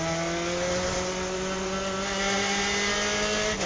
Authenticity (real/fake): real